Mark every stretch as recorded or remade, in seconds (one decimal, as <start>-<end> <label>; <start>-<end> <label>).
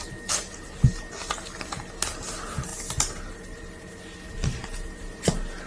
0.0-5.7 recorded